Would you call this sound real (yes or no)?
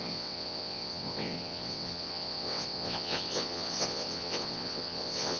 no